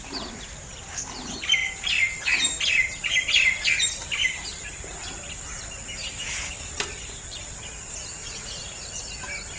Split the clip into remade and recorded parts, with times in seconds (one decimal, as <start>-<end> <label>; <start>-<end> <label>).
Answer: 0.0-8.1 recorded; 8.1-9.0 remade; 9.0-9.6 recorded